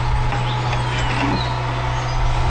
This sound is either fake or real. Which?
real